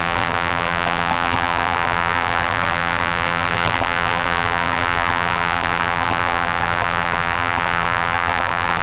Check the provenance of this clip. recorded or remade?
remade